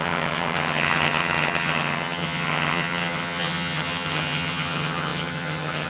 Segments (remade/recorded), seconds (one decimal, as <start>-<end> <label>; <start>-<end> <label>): 0.0-5.9 remade